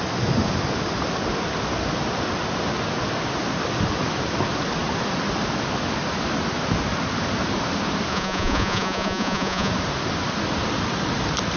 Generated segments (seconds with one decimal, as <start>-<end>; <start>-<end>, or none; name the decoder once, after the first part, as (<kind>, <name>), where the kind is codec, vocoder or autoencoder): 8.1-9.7 (vocoder, Vocos)